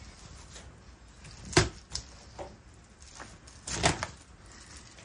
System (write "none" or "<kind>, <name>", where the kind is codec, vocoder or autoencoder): none